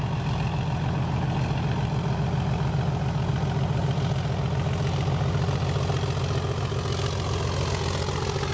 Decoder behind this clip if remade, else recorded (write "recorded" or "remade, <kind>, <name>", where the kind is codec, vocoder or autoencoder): recorded